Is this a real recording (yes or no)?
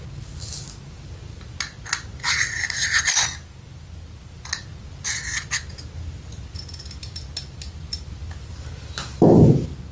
yes